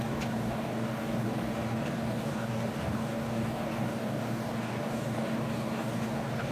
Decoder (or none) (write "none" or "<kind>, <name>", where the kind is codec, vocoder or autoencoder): codec, DAC